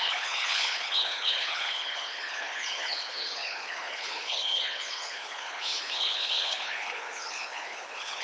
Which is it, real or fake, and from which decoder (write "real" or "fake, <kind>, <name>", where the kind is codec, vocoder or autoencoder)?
fake, codec, HILCodec